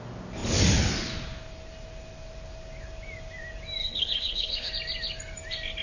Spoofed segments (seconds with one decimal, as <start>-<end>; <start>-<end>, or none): 3.8-4.7